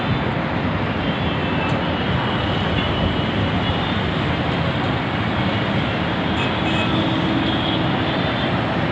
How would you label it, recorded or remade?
recorded